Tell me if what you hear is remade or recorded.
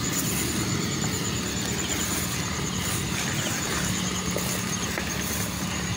recorded